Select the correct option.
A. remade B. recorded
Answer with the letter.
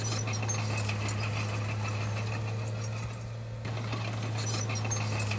B